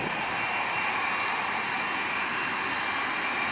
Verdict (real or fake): real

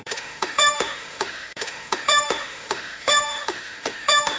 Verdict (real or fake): fake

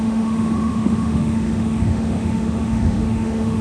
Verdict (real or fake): fake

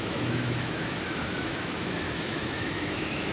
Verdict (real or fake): fake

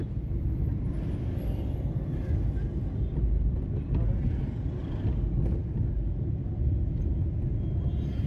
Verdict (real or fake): real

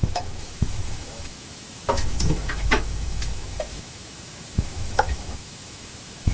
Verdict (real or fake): fake